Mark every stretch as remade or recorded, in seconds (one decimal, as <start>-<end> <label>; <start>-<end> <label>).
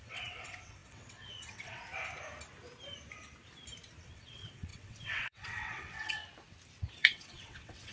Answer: 0.0-1.9 remade; 1.9-4.0 recorded; 4.0-6.2 remade; 6.2-6.9 recorded; 6.9-7.9 remade